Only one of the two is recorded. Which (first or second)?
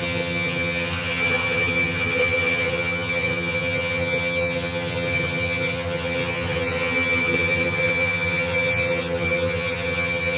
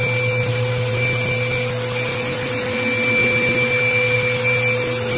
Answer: second